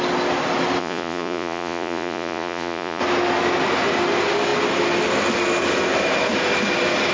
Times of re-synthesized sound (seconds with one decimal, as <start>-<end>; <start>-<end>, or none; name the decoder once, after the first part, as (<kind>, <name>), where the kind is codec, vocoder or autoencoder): 0.8-3.0 (vocoder, Vocos)